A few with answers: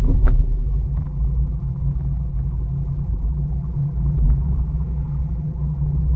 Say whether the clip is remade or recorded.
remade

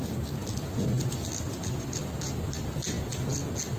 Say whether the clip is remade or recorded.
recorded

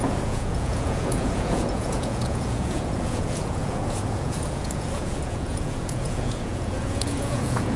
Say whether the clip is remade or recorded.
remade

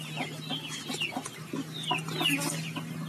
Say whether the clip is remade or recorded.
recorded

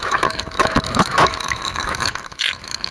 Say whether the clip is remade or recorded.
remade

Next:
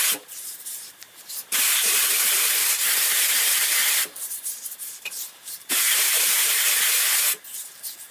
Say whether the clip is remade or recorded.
remade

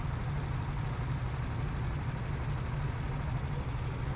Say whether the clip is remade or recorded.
recorded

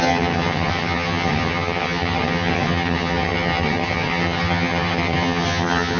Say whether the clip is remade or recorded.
remade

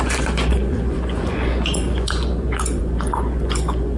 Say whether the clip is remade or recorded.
remade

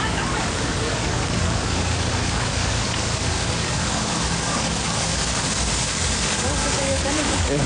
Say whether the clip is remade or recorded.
remade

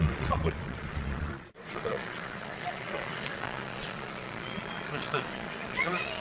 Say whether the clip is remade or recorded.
remade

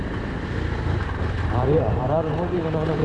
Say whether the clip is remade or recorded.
remade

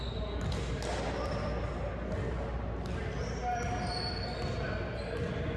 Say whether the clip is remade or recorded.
recorded